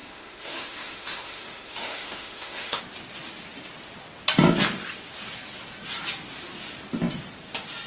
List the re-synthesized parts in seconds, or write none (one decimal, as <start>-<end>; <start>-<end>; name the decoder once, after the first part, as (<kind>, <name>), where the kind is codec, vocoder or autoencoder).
0.0-2.8 (autoencoder, DAC-VAE)